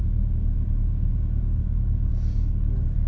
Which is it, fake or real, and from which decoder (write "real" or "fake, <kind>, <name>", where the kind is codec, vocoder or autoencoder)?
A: fake, vocoder, Vocos